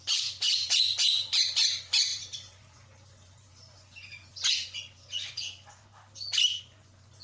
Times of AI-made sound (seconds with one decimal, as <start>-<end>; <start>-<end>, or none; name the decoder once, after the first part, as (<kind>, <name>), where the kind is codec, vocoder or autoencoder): 0.0-5.8 (vocoder, Vocos); 6.6-7.2